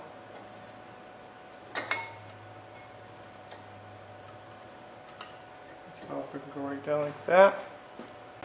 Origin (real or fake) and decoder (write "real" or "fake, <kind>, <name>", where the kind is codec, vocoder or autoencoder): real